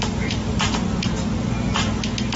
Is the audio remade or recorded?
recorded